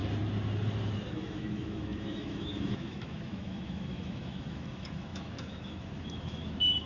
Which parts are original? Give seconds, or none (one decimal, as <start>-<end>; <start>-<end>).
0.0-1.1